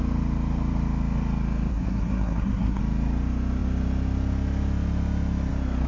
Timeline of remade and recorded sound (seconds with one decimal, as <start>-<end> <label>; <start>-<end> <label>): 0.0-1.7 recorded; 1.7-2.8 remade; 2.8-5.9 recorded